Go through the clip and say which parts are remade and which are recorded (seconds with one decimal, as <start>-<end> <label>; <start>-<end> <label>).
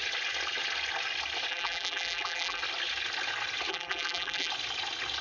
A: 0.0-1.5 recorded; 1.5-2.6 remade; 2.6-3.7 recorded; 3.7-4.5 remade; 4.5-5.2 recorded